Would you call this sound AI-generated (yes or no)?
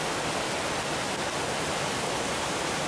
no